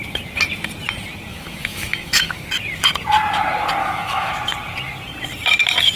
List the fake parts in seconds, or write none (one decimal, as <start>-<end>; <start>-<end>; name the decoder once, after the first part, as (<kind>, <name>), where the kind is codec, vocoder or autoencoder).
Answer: 1.3-2.5 (autoencoder, DAC-VAE); 3.8-4.3